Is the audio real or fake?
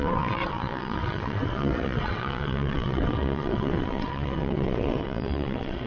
fake